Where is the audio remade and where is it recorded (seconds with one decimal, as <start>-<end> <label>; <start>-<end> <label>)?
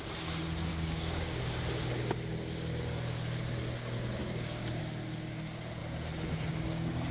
0.0-0.7 recorded; 0.7-1.4 remade; 1.4-4.2 recorded; 4.2-4.8 remade; 4.8-7.1 recorded